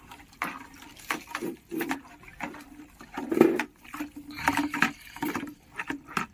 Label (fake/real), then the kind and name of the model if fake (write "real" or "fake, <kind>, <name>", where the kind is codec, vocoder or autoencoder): real